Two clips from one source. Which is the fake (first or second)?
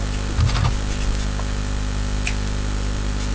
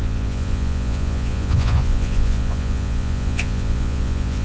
second